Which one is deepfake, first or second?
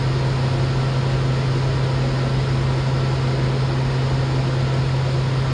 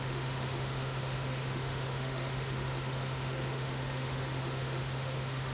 second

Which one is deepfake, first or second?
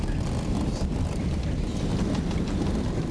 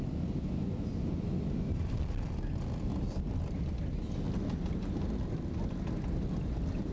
first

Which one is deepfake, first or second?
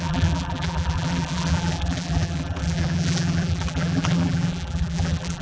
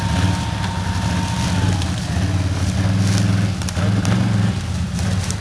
first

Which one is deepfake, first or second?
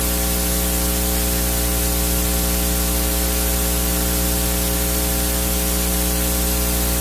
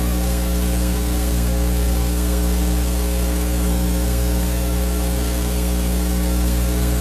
second